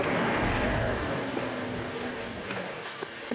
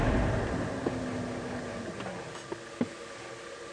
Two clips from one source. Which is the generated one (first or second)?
first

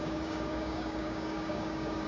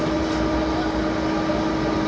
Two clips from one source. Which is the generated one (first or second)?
first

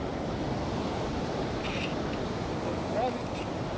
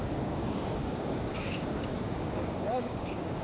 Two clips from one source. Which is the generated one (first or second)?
second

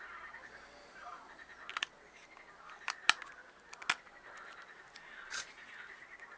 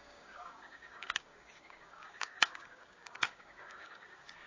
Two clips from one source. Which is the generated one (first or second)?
second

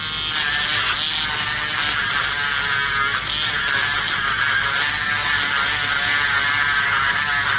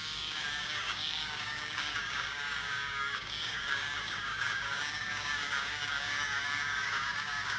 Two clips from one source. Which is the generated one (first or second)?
second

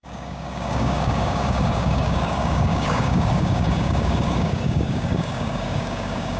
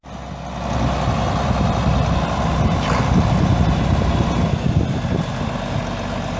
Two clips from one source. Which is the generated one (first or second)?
first